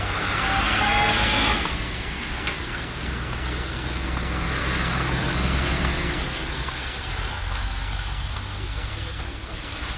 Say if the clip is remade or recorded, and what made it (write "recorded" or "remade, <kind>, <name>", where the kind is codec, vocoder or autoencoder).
remade, codec, SNAC